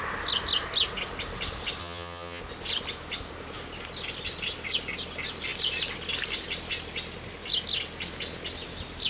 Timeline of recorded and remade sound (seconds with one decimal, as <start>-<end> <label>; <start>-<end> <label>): 0.0-1.8 recorded; 1.8-2.4 remade; 2.4-9.1 recorded